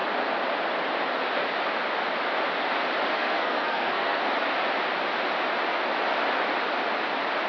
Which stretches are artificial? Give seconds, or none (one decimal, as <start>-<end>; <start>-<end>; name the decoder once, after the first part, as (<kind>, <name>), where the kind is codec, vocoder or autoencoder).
3.1-4.3 (codec, SNAC)